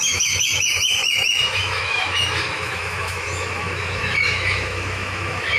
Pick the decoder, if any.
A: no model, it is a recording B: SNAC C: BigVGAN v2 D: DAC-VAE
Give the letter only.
D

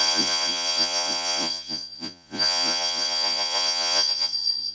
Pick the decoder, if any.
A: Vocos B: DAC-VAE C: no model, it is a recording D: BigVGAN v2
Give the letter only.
A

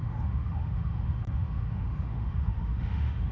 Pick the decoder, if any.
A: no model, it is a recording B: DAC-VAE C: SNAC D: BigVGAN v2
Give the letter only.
B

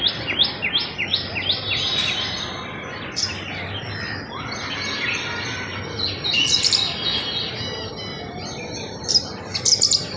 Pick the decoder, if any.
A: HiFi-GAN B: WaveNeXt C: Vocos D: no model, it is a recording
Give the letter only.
D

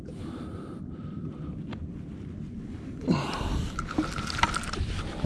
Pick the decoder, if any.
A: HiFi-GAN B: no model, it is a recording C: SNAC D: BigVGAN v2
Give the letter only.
D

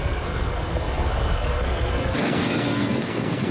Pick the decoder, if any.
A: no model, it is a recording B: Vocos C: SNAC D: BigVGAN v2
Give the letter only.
C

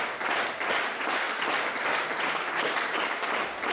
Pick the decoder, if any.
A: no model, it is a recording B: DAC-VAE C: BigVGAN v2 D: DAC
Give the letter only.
A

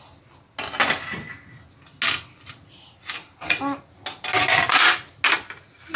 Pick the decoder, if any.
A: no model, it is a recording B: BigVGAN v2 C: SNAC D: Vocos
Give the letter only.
A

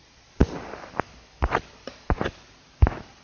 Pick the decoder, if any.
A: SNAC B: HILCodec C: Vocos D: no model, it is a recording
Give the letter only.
D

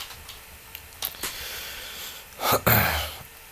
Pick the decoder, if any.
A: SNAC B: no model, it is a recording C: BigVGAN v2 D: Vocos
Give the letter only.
C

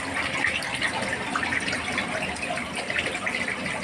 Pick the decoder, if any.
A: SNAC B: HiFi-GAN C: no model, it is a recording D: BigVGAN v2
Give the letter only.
C